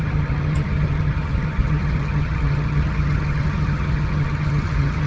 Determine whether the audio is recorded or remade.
remade